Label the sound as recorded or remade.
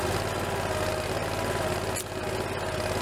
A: recorded